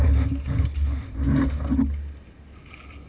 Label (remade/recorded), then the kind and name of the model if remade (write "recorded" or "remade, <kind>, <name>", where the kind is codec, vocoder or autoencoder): recorded